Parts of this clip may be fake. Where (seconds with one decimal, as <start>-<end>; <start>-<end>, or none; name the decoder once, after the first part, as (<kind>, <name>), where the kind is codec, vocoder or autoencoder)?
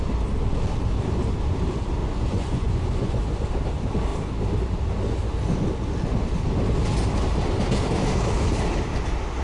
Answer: 2.0-3.2 (vocoder, Vocos)